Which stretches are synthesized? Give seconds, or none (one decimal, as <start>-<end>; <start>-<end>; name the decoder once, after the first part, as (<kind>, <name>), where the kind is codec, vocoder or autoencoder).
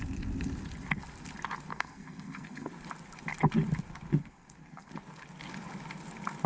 1.7-2.7 (codec, SNAC); 4.2-4.9